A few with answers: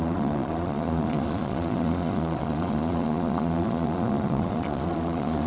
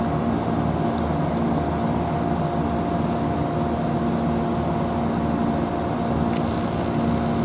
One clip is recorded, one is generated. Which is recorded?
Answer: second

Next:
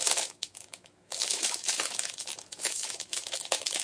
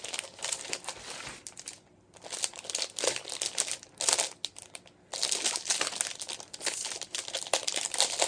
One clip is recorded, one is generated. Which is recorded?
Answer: second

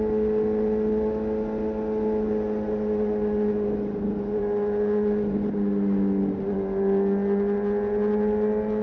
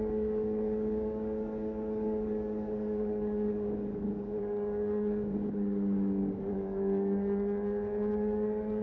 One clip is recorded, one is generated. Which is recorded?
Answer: first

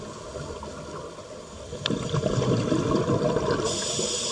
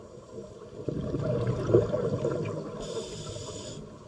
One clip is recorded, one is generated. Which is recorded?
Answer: first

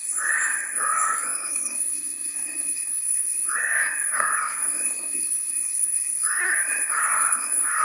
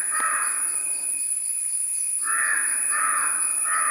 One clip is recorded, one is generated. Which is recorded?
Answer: second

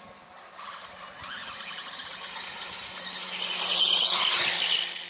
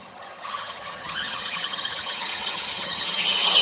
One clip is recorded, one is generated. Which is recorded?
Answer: first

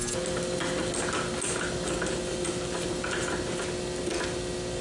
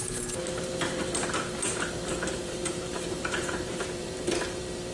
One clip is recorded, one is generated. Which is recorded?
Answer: first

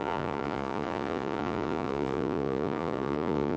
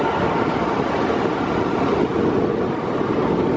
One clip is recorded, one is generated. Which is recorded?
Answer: second